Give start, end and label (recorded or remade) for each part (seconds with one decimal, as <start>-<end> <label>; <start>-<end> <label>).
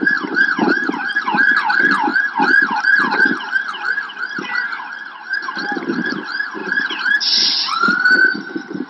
0.0-6.6 recorded; 6.6-7.2 remade; 7.2-8.9 recorded